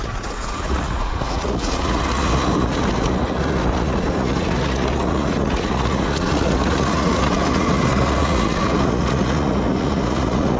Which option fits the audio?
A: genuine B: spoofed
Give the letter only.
B